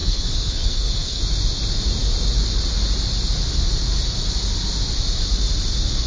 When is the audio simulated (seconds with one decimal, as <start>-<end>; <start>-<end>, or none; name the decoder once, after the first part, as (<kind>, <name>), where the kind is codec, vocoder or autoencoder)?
0.0-1.2 (codec, SNAC)